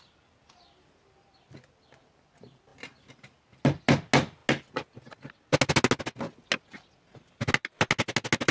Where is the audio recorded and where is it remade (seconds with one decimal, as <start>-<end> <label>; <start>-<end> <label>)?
0.0-8.5 recorded